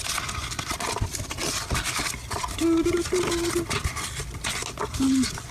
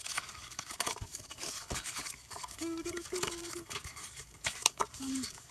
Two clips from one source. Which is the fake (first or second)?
second